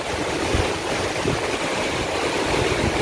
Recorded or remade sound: recorded